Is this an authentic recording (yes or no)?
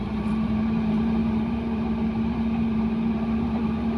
no